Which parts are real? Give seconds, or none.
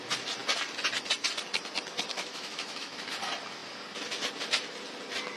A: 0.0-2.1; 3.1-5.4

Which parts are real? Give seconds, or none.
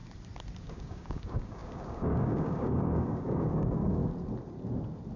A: 0.0-0.6; 4.0-5.2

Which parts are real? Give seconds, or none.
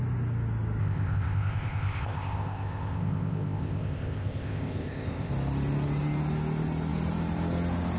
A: 0.0-0.8; 5.3-8.0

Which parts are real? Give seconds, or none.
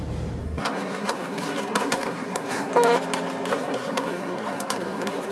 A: 0.0-0.4; 2.7-3.5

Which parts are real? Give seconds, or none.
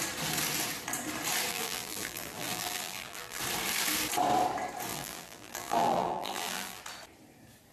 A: 0.0-1.5; 3.4-4.9; 6.8-7.7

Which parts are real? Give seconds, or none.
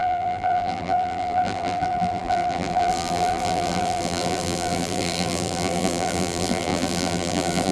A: none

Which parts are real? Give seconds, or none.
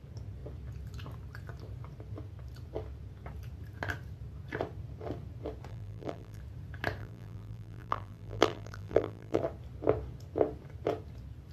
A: 0.0-5.7; 6.4-7.0; 9.4-11.5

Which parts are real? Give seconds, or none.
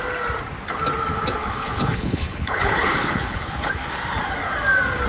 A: 0.0-1.4; 3.7-5.1